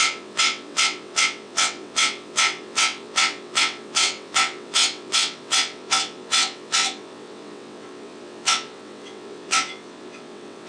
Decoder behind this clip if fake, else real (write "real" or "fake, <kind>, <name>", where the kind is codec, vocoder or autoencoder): fake, vocoder, WaveNeXt